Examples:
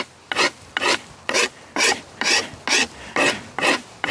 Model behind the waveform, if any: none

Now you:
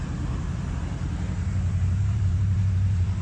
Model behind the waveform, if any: vocoder, BigVGAN v2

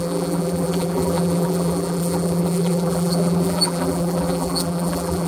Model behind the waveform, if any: vocoder, BigVGAN v2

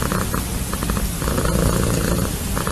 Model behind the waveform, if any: none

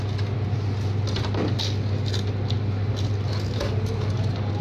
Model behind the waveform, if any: none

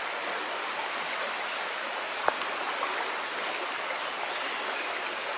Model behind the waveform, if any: none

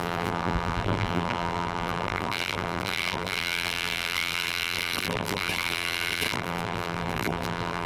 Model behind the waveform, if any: vocoder, BigVGAN v2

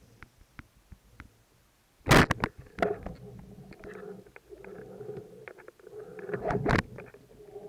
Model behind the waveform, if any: none